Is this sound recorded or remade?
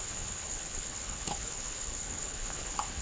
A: remade